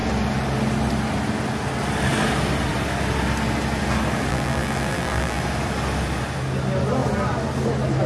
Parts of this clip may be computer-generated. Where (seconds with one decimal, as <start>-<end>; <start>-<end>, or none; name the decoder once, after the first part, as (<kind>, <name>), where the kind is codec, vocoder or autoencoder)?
4.3-5.4 (vocoder, BigVGAN v2)